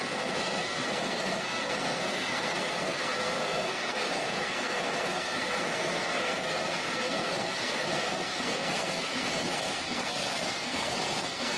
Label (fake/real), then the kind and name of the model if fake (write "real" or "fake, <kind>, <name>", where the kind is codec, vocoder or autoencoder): fake, codec, SNAC